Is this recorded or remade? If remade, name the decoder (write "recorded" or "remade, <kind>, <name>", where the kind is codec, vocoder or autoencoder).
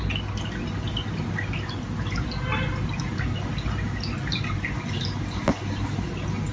recorded